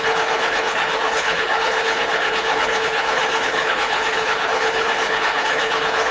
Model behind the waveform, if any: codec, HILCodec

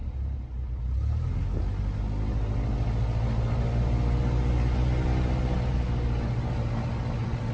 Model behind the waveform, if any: none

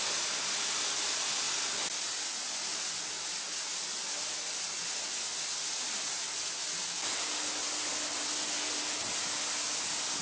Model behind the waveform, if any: none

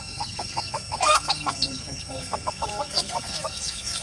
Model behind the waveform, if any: codec, SNAC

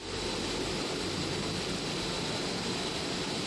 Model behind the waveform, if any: none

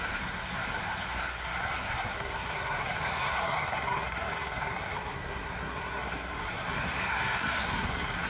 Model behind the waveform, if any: codec, SNAC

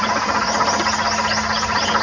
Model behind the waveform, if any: none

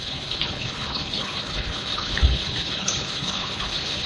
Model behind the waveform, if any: codec, HILCodec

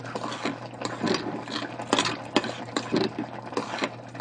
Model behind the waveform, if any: none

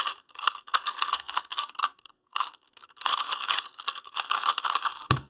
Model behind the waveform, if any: codec, SNAC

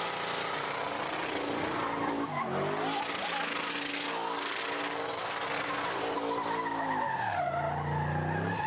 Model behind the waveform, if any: none